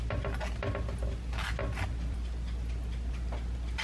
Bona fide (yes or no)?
yes